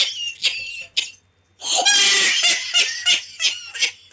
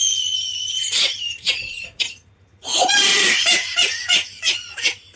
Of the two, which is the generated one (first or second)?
second